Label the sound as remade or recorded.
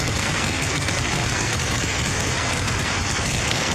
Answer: remade